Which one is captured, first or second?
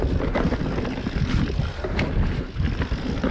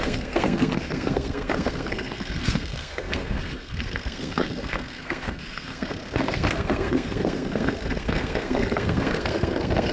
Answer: first